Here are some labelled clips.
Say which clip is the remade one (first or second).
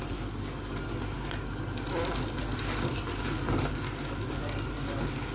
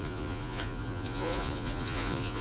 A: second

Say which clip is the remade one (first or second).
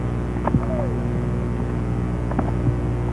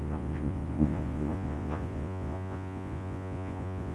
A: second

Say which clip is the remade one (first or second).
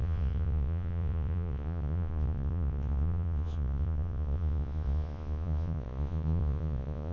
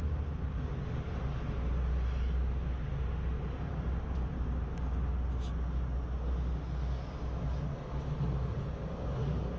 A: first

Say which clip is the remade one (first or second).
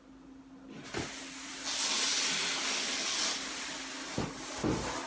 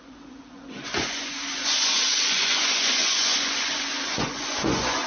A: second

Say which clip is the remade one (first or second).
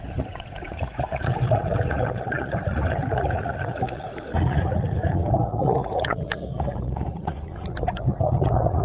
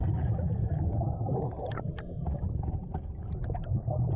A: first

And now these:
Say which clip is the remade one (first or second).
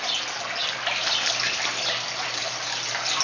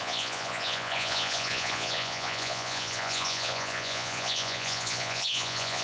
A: second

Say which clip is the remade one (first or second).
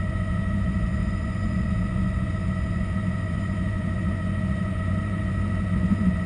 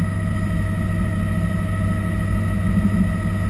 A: first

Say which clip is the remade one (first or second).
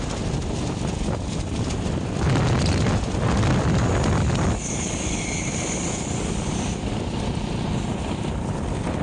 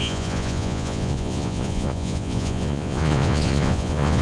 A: second